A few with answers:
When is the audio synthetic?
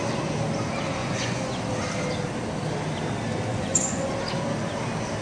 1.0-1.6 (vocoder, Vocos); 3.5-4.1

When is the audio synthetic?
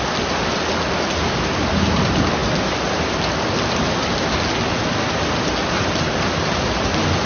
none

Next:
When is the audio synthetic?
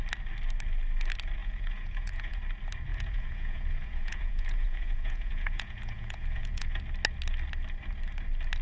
1.4-2.4 (vocoder, Vocos); 2.9-6.8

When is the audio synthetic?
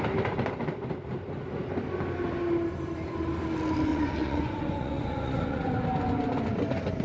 3.9-5.6 (vocoder, Vocos)